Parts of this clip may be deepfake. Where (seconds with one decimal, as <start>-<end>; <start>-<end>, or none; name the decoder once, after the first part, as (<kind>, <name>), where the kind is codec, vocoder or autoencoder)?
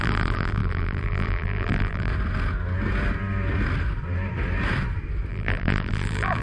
0.0-2.1 (vocoder, BigVGAN v2); 5.3-6.4